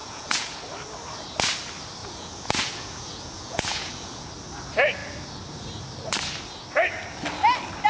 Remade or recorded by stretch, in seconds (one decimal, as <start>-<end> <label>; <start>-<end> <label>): 0.0-0.6 remade; 0.6-2.0 recorded; 2.0-4.3 remade; 4.3-7.9 recorded